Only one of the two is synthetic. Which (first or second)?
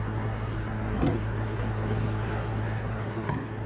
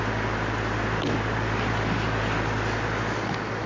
first